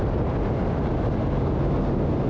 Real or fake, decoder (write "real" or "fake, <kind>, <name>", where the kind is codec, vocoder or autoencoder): real